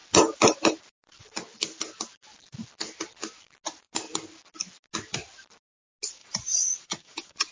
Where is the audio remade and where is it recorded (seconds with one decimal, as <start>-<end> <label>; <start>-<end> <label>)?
0.0-6.2 recorded; 6.2-7.5 remade